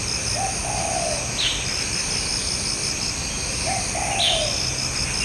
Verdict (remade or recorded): recorded